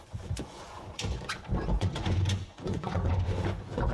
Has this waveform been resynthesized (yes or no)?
yes